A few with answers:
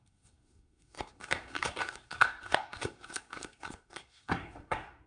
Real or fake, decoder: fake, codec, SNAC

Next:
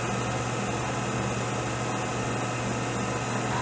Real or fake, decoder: real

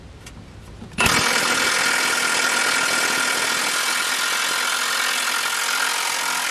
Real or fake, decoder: real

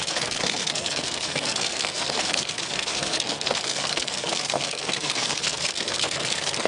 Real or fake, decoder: fake, codec, SNAC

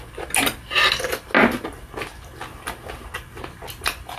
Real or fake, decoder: real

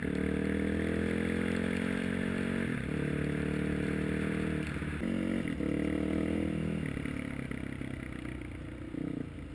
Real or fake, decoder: real